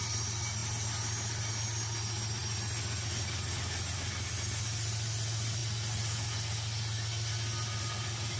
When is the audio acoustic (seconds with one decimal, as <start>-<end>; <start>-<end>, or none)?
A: 0.0-8.4